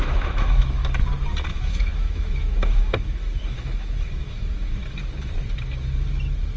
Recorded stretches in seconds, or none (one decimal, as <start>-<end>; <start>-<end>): 0.8-1.5; 4.8-6.6